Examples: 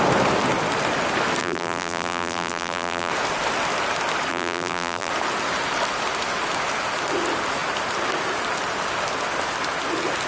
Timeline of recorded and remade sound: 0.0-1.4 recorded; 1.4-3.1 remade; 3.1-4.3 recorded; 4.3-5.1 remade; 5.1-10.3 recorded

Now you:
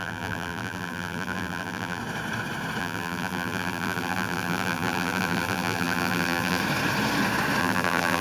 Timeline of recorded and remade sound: 0.0-2.0 remade; 2.0-2.8 recorded; 2.8-6.6 remade; 6.6-7.6 recorded; 7.6-8.2 remade

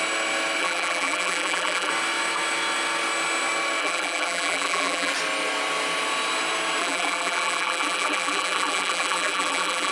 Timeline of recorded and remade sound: 0.0-0.6 recorded; 0.6-1.9 remade; 1.9-3.8 recorded; 3.8-5.1 remade; 5.1-6.8 recorded; 6.8-9.9 remade

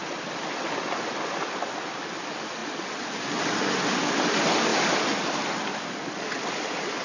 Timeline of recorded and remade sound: 0.0-7.0 recorded

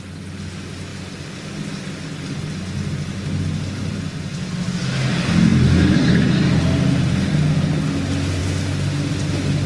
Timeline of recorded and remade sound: 0.0-9.7 recorded

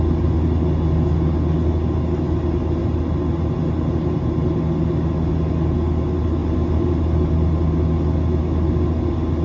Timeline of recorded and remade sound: 0.0-6.4 recorded; 6.4-7.0 remade; 7.0-9.4 recorded

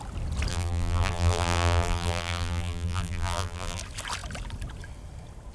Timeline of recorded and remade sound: 0.0-0.5 recorded; 0.5-3.8 remade; 3.8-5.5 recorded

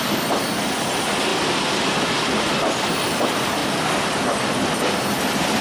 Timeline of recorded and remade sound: 0.0-5.6 recorded